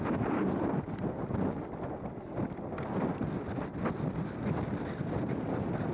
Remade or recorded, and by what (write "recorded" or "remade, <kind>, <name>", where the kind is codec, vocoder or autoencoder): remade, vocoder, BigVGAN v2